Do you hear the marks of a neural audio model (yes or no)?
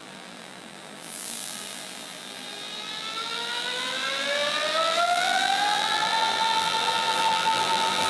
yes